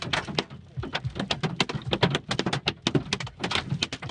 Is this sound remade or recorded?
recorded